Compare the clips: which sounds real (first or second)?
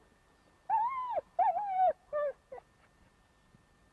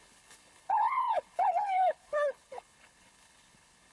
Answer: first